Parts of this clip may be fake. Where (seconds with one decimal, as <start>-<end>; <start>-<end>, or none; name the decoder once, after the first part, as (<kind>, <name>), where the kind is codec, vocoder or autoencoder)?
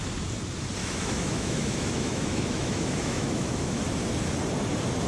0.8-3.8 (autoencoder, DAC-VAE)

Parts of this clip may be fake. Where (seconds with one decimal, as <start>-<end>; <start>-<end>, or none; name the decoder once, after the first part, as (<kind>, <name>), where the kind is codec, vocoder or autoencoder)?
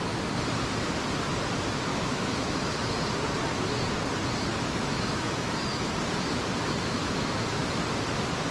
1.9-2.7 (autoencoder, DAC-VAE); 4.5-5.9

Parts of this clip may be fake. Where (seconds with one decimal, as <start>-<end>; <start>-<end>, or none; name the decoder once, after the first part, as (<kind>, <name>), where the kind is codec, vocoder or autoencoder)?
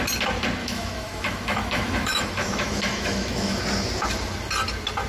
0.6-3.6 (autoencoder, DAC-VAE)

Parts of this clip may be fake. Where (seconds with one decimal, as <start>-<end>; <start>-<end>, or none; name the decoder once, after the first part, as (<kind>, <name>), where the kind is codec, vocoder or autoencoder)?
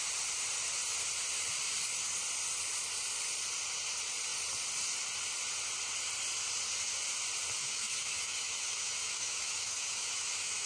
7.6-10.7 (autoencoder, DAC-VAE)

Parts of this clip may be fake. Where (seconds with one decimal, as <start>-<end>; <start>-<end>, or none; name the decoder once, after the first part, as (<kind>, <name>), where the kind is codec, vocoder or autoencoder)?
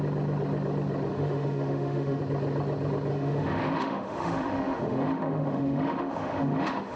1.1-2.2 (autoencoder, DAC-VAE); 3.1-7.0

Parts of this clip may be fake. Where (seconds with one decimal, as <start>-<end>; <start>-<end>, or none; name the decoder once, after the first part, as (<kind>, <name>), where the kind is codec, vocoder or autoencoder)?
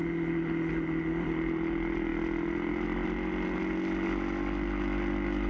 none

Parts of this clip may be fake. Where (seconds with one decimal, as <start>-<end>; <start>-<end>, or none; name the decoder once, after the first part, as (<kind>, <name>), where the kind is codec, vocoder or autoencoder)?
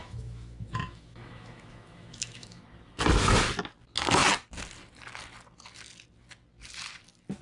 0.0-2.6 (autoencoder, DAC-VAE)